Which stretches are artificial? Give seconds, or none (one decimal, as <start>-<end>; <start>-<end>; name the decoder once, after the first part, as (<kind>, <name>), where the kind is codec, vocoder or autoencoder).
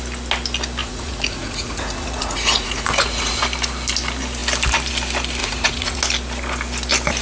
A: 0.8-3.4 (vocoder, Vocos); 5.4-6.0